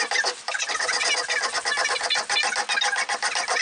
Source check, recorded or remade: recorded